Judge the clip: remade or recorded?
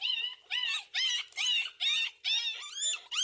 recorded